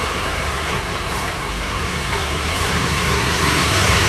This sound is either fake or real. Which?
fake